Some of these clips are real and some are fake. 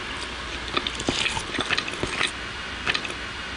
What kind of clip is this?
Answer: real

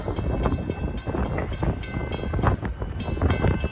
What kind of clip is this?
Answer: real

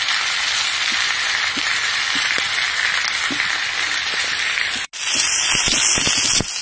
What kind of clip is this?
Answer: real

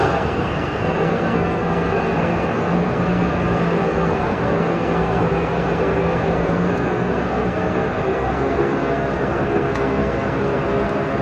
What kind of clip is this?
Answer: fake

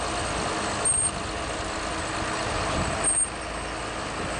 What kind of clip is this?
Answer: real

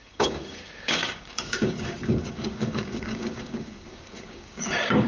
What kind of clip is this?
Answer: fake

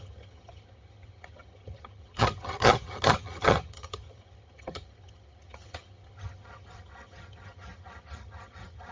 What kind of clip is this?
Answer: fake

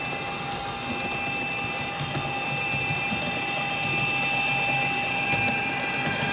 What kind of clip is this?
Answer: real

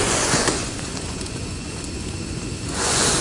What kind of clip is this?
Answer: fake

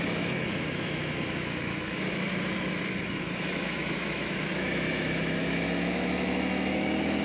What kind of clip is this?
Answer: fake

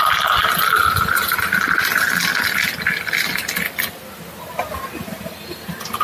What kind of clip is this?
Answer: real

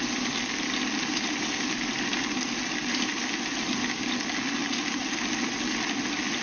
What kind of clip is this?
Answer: real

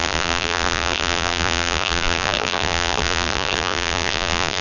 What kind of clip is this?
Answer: fake